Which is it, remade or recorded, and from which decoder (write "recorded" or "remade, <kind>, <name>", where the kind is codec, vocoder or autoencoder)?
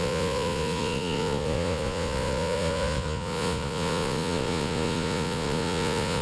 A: remade, vocoder, Vocos